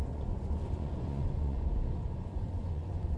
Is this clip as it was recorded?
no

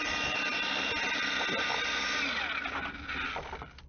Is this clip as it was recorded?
yes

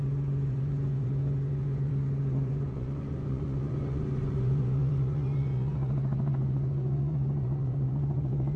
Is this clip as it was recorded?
no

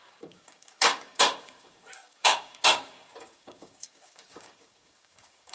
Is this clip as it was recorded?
no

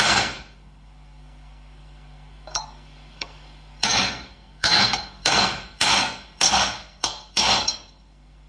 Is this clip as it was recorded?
no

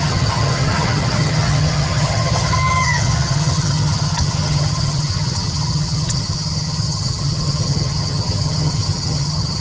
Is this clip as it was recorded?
no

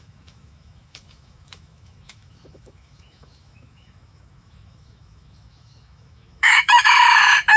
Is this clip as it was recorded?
no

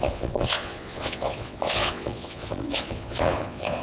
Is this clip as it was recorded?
no